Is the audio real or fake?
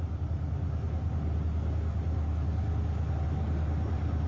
real